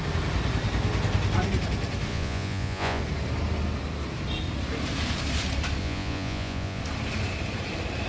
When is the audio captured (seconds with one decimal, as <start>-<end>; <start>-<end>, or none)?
0.0-2.1; 3.0-5.8; 6.8-8.1